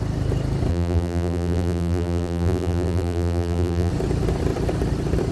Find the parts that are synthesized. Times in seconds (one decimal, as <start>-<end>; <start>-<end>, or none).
0.7-3.9